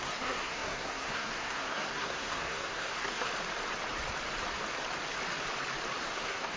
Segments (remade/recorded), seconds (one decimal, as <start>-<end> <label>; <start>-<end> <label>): 0.0-3.3 remade; 3.3-6.0 recorded; 6.0-6.6 remade